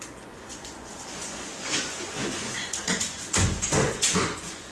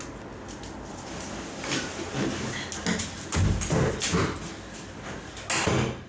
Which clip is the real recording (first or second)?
second